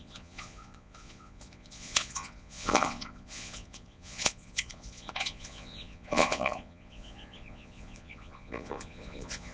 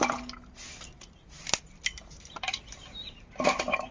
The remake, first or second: first